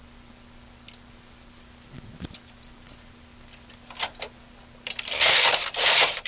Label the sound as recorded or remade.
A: recorded